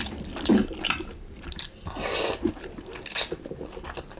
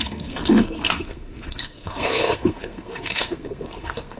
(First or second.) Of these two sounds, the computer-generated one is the second